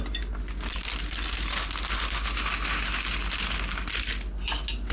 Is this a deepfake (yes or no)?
no